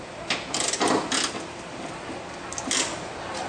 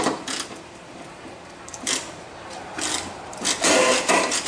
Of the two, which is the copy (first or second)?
second